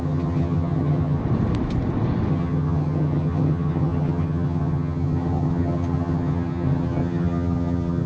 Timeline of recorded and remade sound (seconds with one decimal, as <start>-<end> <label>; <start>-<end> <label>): 0.0-1.2 remade; 1.2-2.3 recorded; 2.3-8.1 remade